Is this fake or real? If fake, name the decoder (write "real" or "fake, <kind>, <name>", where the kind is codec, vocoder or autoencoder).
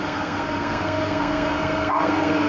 fake, codec, SNAC